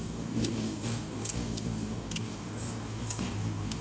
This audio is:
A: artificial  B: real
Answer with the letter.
A